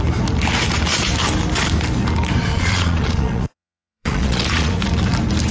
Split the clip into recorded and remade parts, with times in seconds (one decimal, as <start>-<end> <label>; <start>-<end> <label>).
0.0-2.5 recorded; 2.5-4.7 remade; 4.7-5.5 recorded